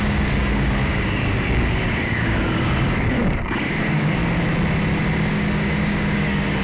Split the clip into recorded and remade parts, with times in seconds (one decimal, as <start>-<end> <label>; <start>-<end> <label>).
0.0-4.2 remade; 4.2-5.3 recorded; 5.3-6.6 remade